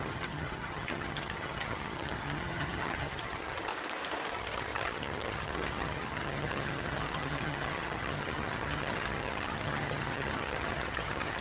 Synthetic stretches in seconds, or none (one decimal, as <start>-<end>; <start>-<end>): 0.0-3.7; 4.3-11.4